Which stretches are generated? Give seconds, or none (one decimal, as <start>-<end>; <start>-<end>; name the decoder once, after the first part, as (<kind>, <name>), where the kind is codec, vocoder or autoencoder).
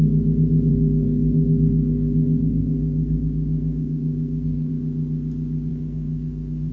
0.7-4.7 (codec, SNAC); 5.7-6.7